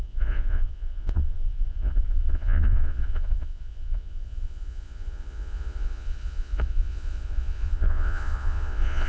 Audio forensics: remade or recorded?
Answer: remade